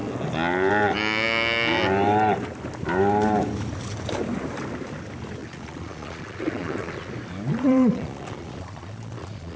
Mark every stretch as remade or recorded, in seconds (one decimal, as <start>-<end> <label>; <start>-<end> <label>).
0.0-5.4 recorded; 5.4-7.1 remade; 7.1-7.5 recorded; 7.5-9.6 remade